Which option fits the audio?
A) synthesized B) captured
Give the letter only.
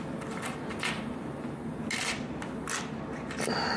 B